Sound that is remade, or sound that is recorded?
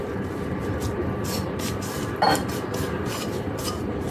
recorded